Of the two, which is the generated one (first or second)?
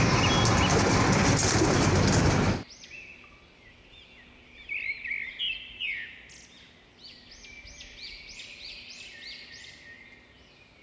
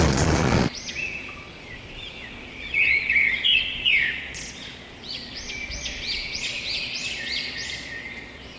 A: second